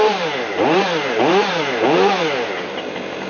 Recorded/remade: remade